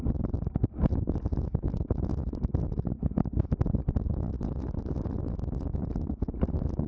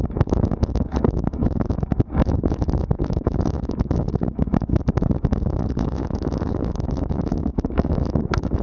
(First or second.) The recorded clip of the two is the first